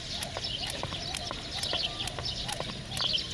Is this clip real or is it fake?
real